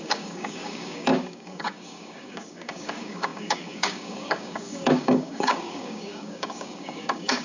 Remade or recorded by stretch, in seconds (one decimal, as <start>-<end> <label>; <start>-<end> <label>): 0.0-7.4 remade